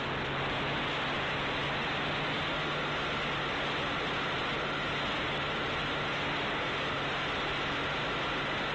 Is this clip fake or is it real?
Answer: real